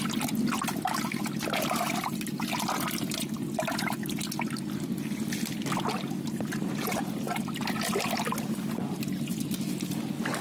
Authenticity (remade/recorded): recorded